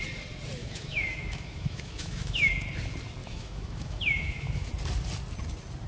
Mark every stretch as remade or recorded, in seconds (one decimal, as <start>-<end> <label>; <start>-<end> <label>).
0.0-0.6 recorded; 0.6-2.5 remade; 2.5-3.2 recorded; 3.2-4.7 remade; 4.7-5.9 recorded